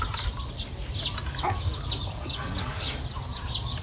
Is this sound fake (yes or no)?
no